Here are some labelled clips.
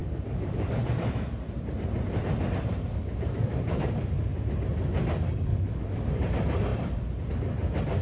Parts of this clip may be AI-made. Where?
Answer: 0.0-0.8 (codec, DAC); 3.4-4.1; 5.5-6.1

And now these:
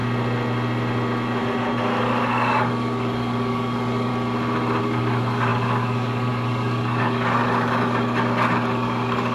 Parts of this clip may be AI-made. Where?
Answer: 2.0-4.1 (codec, DAC); 4.8-9.3

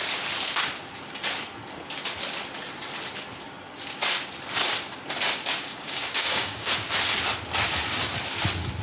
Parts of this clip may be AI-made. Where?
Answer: 5.7-6.7 (codec, DAC)

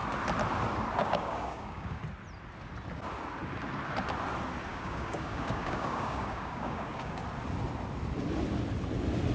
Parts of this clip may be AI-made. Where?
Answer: 1.0-2.0 (codec, DAC); 4.7-7.2

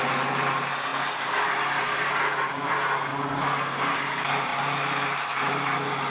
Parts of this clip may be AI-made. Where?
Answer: none

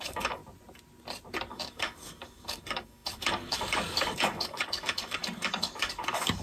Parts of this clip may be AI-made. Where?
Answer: 0.0-0.4 (codec, DAC); 1.5-6.4

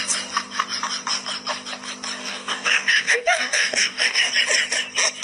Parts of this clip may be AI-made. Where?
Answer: 2.2-4.3 (codec, DAC)

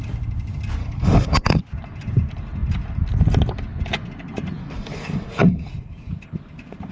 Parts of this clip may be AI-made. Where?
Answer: 0.8-1.6 (codec, DAC); 4.6-5.7